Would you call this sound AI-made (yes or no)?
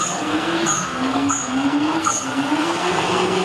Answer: yes